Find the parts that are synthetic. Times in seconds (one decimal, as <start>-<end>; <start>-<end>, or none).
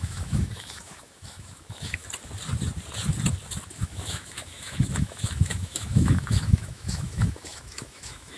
0.0-2.0; 3.7-8.4